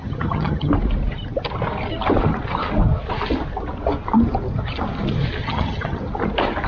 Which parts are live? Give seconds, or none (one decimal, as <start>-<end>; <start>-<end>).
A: 0.7-5.4; 6.0-6.7

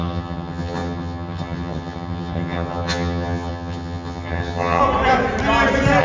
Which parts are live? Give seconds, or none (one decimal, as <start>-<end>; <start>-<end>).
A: 4.8-6.0

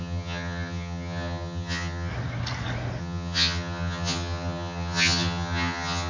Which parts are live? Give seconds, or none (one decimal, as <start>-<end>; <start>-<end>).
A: 2.1-3.0

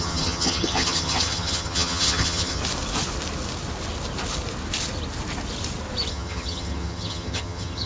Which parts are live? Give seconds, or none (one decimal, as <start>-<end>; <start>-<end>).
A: 2.6-6.1

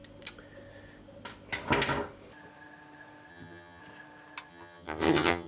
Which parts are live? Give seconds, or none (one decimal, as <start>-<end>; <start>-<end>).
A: 0.0-3.3; 3.8-4.5

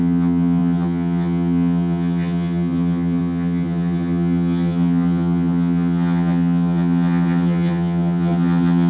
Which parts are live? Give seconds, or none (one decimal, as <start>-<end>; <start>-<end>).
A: none